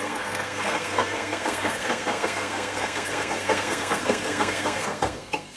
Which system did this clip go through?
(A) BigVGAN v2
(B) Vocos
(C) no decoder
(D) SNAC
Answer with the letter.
D